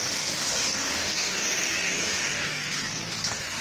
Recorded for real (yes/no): no